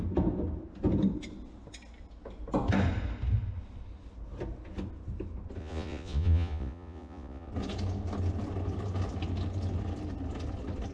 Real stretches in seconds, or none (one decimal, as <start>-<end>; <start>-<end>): 0.0-5.6; 7.5-10.9

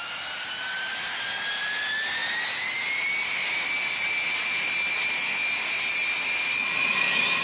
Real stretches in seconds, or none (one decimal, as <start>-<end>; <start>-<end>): 0.0-7.4